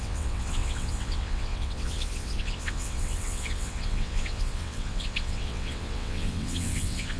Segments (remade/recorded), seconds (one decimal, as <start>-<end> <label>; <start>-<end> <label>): 0.0-7.2 remade